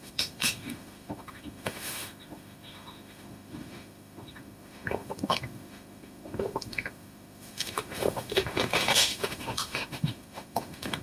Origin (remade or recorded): remade